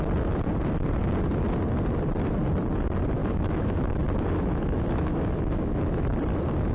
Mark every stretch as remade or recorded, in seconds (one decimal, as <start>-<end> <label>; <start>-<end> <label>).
0.0-3.2 recorded; 3.2-6.2 remade; 6.2-6.7 recorded